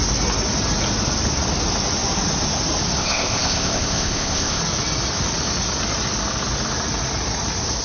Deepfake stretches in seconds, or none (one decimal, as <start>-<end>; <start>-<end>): 3.0-4.6